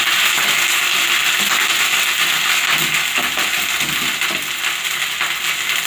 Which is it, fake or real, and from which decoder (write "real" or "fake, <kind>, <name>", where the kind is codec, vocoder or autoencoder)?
real